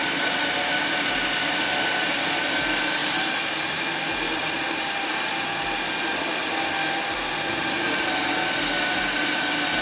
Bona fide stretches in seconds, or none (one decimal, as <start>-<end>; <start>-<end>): 0.0-9.8